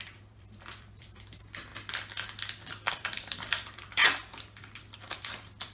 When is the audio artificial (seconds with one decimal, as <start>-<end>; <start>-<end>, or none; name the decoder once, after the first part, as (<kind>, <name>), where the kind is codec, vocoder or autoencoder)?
0.0-1.7 (vocoder, BigVGAN v2); 2.9-4.0; 5.1-5.7